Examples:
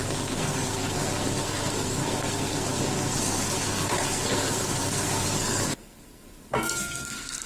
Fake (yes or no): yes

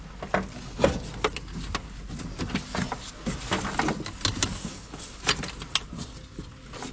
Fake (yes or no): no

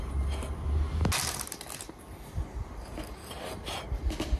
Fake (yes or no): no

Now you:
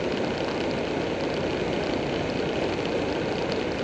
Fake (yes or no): no